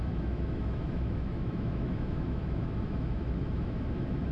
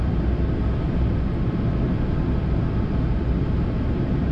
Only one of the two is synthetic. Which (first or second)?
first